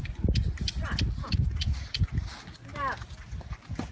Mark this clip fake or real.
real